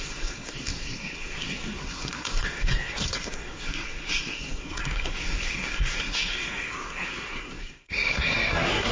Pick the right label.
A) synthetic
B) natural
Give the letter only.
A